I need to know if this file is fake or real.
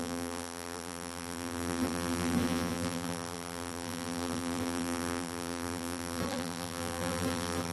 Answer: fake